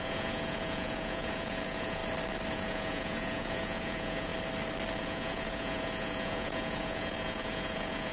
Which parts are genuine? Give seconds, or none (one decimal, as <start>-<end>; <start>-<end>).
2.0-2.5; 4.3-5.0